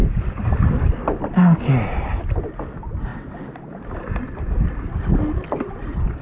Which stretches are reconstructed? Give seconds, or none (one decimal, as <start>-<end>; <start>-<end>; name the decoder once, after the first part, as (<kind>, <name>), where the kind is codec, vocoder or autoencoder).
0.0-1.3 (vocoder, BigVGAN v2)